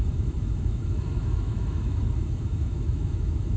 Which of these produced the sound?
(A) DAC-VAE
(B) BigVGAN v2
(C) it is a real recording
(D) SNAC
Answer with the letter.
A